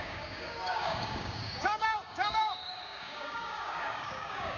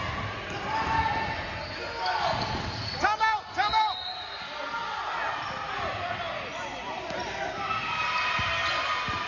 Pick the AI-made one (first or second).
first